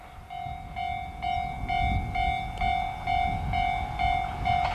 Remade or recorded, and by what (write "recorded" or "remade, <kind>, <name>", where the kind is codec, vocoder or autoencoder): recorded